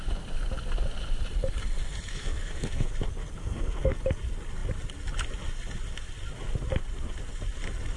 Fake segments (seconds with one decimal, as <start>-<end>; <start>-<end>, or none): 2.1-2.9; 3.4-4.0